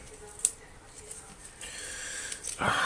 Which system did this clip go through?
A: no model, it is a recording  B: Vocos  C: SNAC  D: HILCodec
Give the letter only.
A